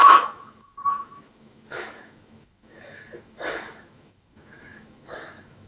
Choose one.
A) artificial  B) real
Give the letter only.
A